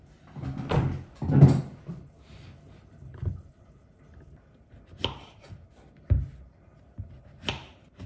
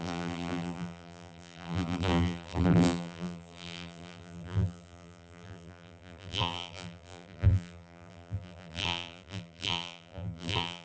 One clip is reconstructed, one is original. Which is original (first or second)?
first